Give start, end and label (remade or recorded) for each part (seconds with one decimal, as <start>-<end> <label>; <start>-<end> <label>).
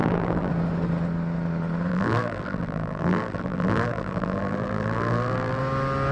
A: 0.0-0.5 remade; 0.5-1.9 recorded; 1.9-5.6 remade; 5.6-6.1 recorded